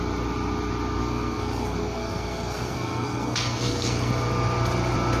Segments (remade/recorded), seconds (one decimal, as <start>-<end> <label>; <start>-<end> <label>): 0.0-1.0 recorded; 1.0-4.1 remade; 4.1-5.2 recorded

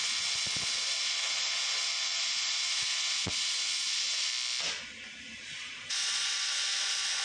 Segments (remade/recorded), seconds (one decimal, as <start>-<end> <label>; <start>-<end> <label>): 0.0-4.3 remade; 4.3-5.4 recorded; 5.4-7.2 remade

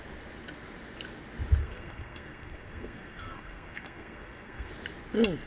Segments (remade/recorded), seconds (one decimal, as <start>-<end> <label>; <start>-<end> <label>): 0.0-1.6 recorded; 1.6-4.7 remade; 4.7-5.5 recorded

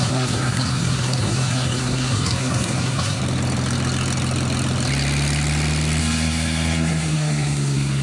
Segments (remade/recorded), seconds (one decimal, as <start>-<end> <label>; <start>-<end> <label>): 0.0-3.2 remade; 3.2-6.0 recorded; 6.0-8.0 remade